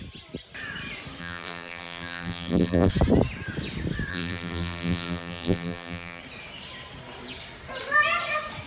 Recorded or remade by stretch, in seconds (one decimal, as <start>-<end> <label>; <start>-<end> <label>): 0.0-1.2 recorded; 1.2-2.9 remade; 2.9-4.1 recorded; 4.1-6.2 remade; 6.2-8.7 recorded